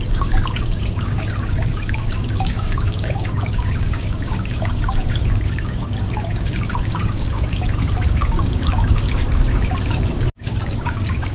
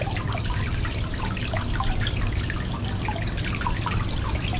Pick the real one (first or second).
second